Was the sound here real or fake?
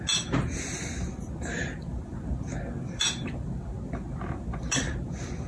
real